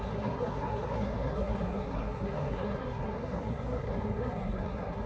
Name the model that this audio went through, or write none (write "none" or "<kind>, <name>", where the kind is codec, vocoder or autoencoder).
codec, SNAC